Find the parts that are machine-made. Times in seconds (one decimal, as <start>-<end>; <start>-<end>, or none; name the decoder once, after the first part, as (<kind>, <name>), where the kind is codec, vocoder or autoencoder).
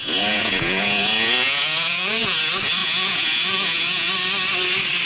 0.0-2.4 (vocoder, Vocos); 2.8-4.1